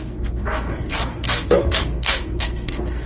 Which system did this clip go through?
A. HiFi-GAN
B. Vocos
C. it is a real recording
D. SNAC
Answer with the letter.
D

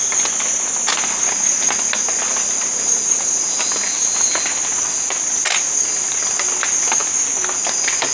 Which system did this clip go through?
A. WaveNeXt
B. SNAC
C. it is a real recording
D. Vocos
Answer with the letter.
C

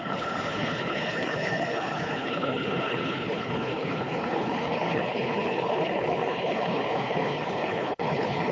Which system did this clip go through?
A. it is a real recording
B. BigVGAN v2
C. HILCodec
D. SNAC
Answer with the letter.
C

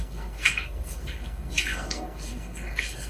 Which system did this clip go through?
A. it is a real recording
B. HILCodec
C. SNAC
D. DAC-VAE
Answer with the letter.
C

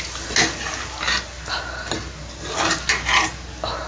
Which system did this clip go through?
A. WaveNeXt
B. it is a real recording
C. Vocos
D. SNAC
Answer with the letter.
B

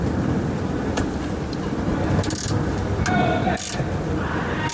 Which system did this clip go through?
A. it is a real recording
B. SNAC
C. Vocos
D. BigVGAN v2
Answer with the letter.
A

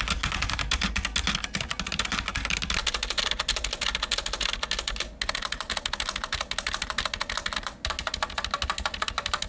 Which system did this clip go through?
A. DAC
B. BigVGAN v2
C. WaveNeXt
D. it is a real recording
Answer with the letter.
D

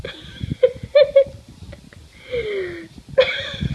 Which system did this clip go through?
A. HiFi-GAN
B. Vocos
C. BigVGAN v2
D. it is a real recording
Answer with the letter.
D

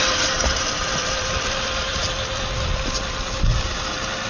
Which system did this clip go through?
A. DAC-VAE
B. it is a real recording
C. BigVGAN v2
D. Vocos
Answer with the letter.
C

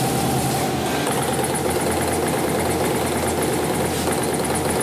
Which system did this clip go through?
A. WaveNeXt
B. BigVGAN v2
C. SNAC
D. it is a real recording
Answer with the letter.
D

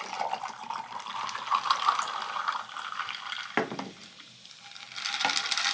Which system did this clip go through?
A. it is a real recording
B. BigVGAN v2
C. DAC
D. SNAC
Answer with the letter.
A